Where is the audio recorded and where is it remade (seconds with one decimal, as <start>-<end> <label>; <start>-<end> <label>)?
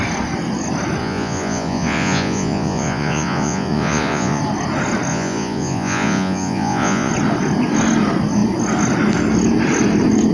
0.0-1.0 recorded; 1.0-4.4 remade; 4.4-5.1 recorded; 5.1-7.1 remade; 7.1-10.3 recorded